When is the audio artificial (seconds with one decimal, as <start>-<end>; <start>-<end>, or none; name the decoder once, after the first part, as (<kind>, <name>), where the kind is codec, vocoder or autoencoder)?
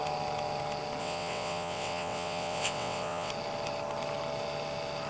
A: 1.0-3.3 (vocoder, WaveNeXt)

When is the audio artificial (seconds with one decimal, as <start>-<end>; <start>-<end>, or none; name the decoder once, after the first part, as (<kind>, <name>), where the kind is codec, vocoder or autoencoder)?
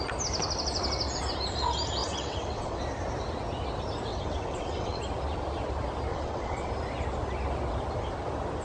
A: 2.0-2.8 (vocoder, WaveNeXt); 4.1-5.0; 6.1-6.7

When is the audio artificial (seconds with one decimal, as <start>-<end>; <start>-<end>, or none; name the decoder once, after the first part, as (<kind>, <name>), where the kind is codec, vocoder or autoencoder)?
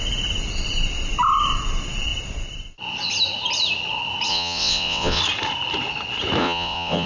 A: 4.3-5.2 (vocoder, WaveNeXt); 6.4-7.1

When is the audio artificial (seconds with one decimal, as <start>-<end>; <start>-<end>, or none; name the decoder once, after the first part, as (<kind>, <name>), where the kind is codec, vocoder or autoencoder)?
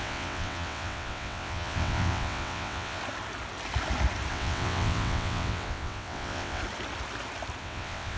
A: 0.0-3.0 (vocoder, WaveNeXt); 4.3-6.6; 7.6-8.2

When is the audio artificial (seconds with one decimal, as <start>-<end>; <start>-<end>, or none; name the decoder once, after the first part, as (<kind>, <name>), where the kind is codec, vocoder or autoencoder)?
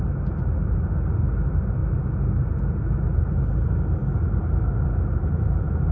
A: none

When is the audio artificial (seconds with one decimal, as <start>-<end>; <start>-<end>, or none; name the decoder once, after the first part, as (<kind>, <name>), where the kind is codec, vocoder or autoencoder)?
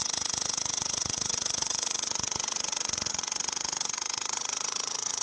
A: 0.0-5.2 (vocoder, WaveNeXt)